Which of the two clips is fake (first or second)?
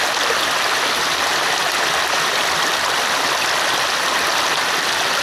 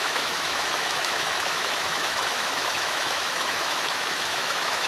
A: second